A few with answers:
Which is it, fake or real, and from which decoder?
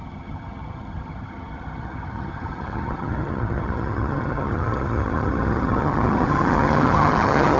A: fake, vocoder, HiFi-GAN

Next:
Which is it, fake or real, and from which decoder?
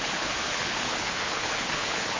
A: fake, codec, HILCodec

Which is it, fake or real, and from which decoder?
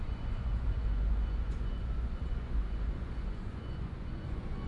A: fake, vocoder, Vocos